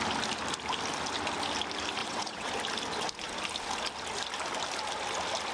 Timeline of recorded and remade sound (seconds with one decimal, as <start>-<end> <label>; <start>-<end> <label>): 0.0-2.0 recorded; 2.0-2.5 remade; 2.5-5.5 recorded